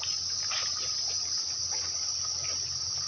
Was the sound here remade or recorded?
recorded